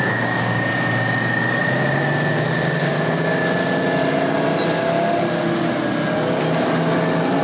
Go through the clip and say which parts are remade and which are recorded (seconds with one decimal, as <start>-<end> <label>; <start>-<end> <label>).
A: 0.0-0.7 remade; 0.7-2.5 recorded; 2.5-3.4 remade; 3.4-7.4 recorded